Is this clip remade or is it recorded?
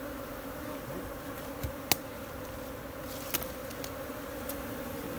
recorded